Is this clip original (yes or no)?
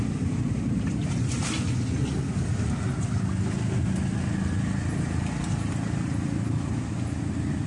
yes